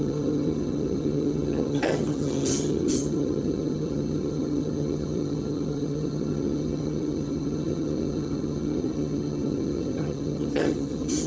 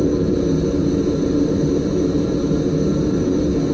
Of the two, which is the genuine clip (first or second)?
second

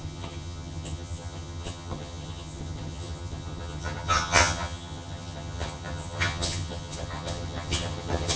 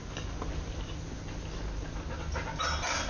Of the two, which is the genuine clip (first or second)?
second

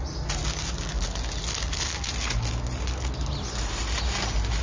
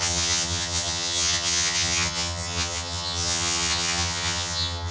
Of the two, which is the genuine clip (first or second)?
first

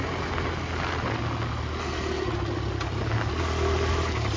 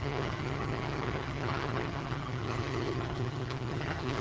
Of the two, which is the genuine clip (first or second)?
first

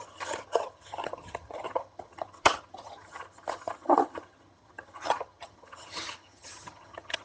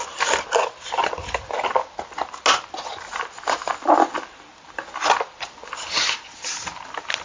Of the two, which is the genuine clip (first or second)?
second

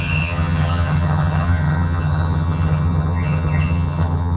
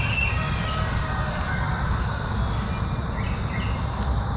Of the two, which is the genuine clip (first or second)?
second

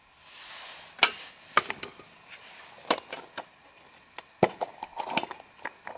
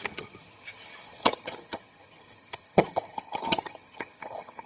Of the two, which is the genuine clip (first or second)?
first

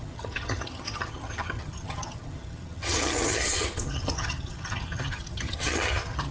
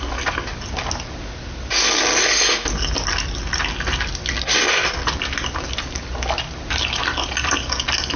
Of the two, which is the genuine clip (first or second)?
second